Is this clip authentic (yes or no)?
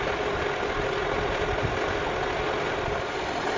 yes